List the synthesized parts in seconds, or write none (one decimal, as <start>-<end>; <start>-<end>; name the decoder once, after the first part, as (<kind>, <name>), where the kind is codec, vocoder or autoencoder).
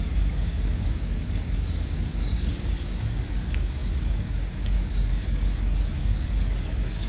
0.0-7.1 (codec, DAC)